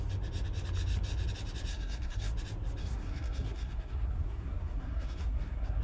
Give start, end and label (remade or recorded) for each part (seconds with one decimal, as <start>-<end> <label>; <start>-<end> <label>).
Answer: 0.0-1.7 recorded; 1.7-2.3 remade; 2.3-2.8 recorded; 2.8-5.8 remade

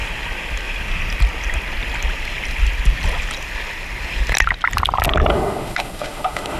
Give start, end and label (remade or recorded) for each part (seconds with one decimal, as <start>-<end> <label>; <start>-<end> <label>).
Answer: 0.0-5.3 recorded; 5.3-6.6 remade

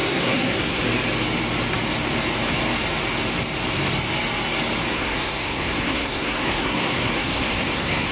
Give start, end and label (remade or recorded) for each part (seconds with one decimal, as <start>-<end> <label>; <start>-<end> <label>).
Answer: 0.0-0.8 remade; 0.8-4.9 recorded; 4.9-8.1 remade

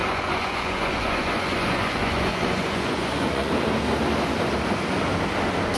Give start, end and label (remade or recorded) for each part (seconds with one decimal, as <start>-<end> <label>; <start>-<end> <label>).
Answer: 0.0-3.5 remade; 3.5-5.8 recorded

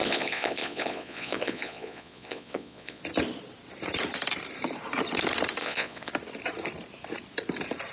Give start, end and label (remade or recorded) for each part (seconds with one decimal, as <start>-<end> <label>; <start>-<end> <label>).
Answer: 0.0-3.0 remade; 3.0-5.6 recorded; 5.6-6.1 remade; 6.1-7.9 recorded

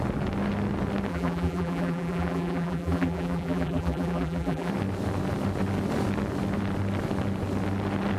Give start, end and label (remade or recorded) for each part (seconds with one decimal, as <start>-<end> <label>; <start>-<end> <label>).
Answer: 0.0-1.1 recorded; 1.1-4.7 remade; 4.7-8.2 recorded

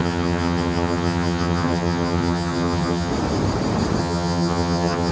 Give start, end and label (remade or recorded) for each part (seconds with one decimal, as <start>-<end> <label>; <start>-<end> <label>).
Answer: 0.0-3.1 remade; 3.1-4.0 recorded; 4.0-5.1 remade

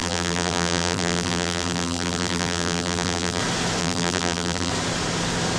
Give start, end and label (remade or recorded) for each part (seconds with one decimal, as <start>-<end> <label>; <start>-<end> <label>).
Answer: 0.0-3.4 remade; 3.4-3.8 recorded; 3.8-4.7 remade; 4.7-5.6 recorded